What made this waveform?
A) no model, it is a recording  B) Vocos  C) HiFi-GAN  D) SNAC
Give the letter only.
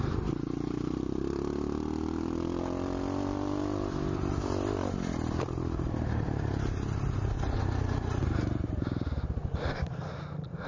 A